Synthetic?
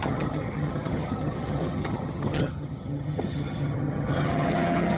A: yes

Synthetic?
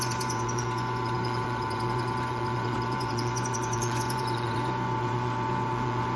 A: yes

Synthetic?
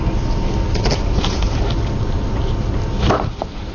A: no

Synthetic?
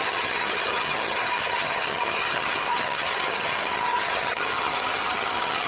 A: yes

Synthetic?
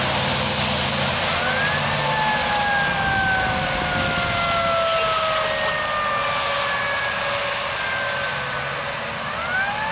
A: no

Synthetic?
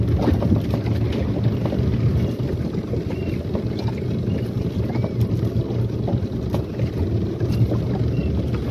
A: no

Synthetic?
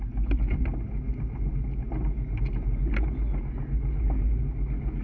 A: no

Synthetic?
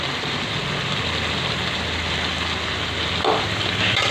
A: no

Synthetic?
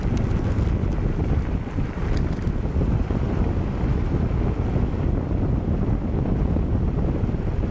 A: no